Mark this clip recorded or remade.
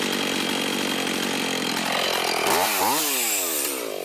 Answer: recorded